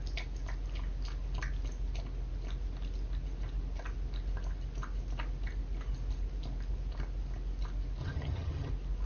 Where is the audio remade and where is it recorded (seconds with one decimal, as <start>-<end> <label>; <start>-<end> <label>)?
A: 0.0-8.0 recorded; 8.0-8.7 remade; 8.7-9.1 recorded